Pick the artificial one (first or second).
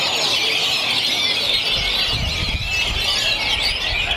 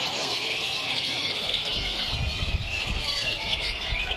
second